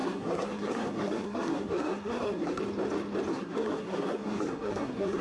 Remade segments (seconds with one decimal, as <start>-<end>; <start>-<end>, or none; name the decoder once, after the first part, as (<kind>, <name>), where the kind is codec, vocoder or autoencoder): 0.0-2.6 (codec, SNAC); 3.3-5.2